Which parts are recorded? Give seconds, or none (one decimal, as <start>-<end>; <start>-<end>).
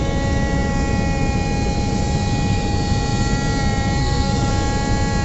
0.0-4.0; 4.5-5.2